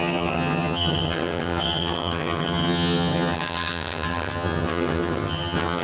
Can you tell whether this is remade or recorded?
remade